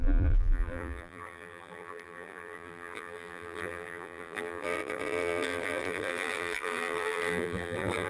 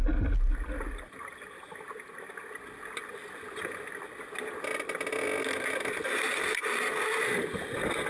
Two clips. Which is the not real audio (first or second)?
first